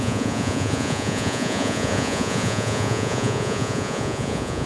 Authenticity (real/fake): fake